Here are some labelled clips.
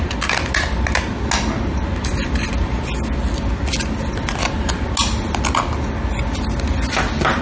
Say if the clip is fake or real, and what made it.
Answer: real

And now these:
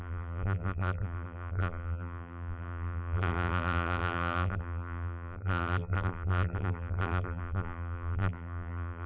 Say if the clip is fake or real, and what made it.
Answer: fake, vocoder, BigVGAN v2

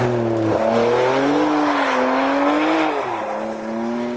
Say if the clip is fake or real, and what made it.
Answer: real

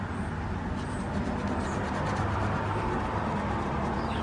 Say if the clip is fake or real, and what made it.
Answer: real